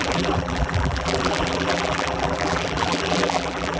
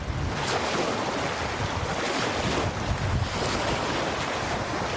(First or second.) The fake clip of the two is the first